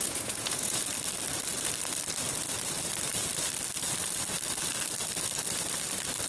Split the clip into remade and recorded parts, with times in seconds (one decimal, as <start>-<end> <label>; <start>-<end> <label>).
0.0-0.8 remade; 0.8-6.3 recorded